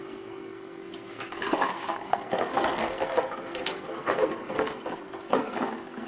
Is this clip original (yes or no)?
no